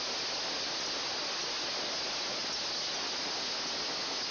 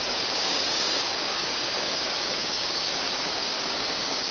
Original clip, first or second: first